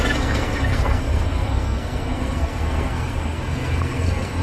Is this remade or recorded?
remade